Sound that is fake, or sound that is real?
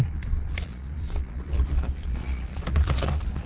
fake